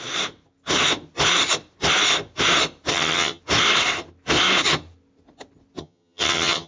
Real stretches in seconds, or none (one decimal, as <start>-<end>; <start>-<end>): 0.0-2.9; 3.4-5.8